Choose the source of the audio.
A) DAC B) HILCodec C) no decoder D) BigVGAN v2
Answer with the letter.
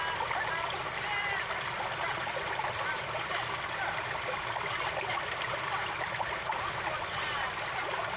C